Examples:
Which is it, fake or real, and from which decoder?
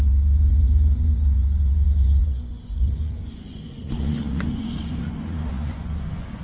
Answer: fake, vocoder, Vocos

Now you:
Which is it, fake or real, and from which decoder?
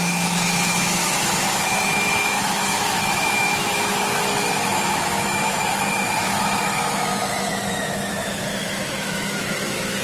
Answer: fake, autoencoder, DAC-VAE